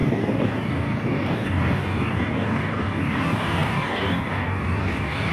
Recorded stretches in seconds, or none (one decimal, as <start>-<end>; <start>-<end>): none